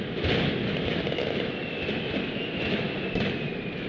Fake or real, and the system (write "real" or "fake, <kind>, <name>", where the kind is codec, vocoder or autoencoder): real